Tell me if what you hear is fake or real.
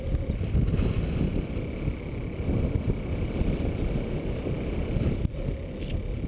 real